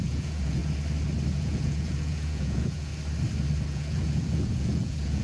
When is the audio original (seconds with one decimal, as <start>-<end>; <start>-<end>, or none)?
0.6-1.3; 2.9-3.7